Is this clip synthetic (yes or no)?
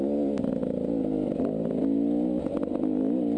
no